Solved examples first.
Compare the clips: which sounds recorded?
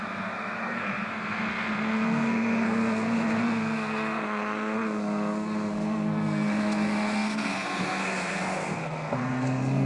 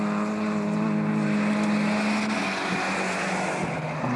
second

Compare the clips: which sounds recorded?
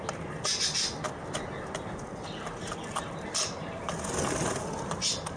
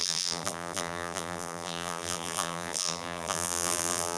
first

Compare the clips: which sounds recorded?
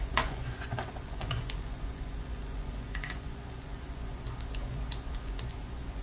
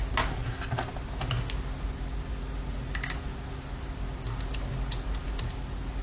second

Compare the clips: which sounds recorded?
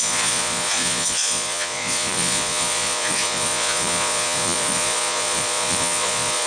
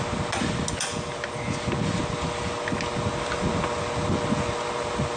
second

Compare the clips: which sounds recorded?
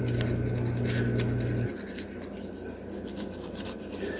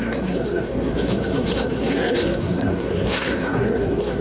first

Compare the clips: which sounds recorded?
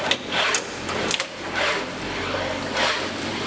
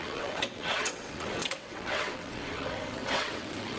first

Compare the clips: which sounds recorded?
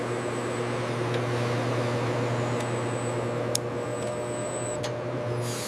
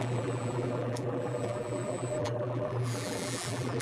first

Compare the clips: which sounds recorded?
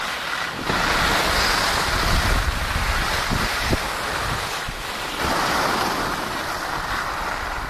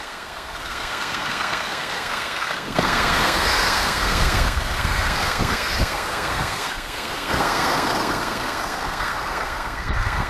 first